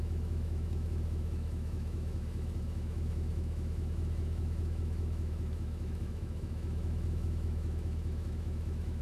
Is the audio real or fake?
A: fake